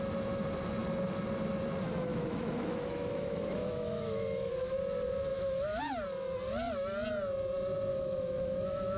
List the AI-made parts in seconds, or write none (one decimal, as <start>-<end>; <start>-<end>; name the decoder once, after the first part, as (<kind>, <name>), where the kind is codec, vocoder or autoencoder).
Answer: 2.1-4.5 (autoencoder, DAC-VAE); 5.3-5.8; 7.9-9.0